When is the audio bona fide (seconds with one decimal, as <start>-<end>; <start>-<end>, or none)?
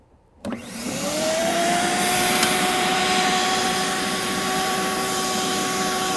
none